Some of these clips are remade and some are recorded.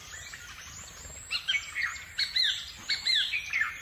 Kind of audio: remade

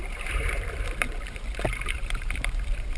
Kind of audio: remade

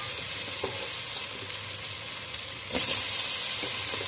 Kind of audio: recorded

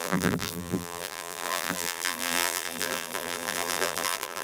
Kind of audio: remade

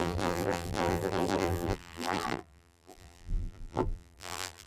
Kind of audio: remade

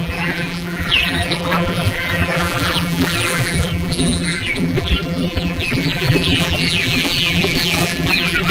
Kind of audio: remade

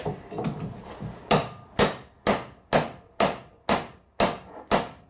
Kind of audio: recorded